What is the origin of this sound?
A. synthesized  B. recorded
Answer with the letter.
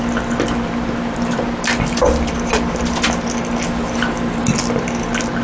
B